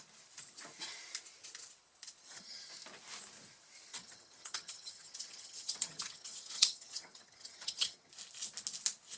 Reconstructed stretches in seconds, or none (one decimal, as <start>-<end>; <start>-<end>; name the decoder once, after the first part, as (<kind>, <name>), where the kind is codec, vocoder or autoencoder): 2.2-2.7 (vocoder, HiFi-GAN); 3.9-8.1